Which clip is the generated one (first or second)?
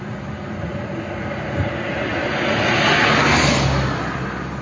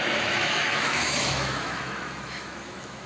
second